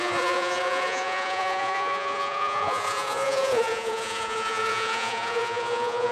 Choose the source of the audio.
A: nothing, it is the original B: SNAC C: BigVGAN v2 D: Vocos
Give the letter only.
D